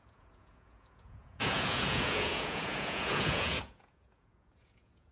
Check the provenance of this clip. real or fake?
fake